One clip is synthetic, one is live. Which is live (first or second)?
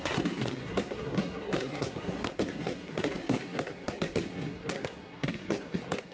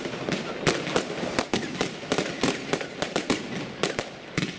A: second